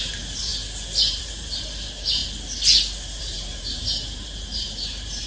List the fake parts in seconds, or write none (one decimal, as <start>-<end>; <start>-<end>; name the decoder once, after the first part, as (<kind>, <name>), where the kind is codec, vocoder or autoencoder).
0.0-0.5 (vocoder, BigVGAN v2); 1.2-2.2; 3.2-5.3